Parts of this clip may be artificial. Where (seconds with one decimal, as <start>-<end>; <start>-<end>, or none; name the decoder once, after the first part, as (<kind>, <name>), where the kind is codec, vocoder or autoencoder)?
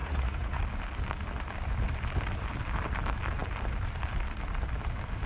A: 0.0-0.6 (vocoder, Vocos)